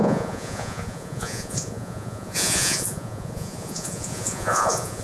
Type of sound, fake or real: fake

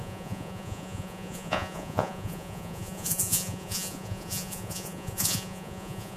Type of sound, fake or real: fake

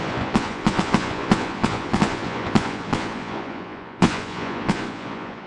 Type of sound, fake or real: fake